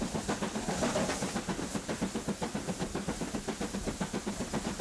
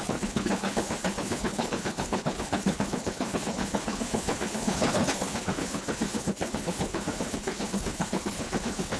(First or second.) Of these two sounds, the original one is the first